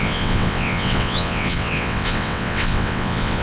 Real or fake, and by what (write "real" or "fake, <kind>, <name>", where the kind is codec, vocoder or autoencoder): fake, vocoder, WaveNeXt